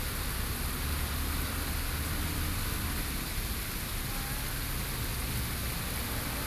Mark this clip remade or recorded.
recorded